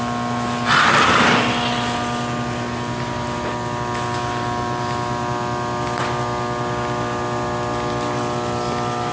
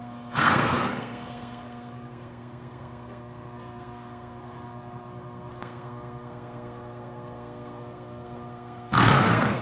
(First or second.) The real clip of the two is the first